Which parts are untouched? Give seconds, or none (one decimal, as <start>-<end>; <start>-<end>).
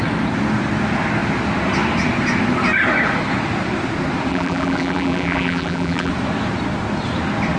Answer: 0.0-4.3; 6.1-7.6